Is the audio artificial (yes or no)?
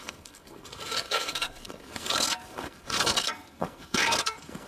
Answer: yes